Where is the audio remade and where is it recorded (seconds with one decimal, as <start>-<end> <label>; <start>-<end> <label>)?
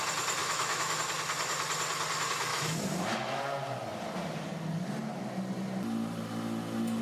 0.0-0.4 recorded; 0.4-1.0 remade; 1.0-2.5 recorded; 2.5-3.4 remade; 3.4-7.0 recorded